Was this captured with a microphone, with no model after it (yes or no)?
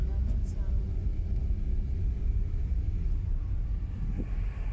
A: yes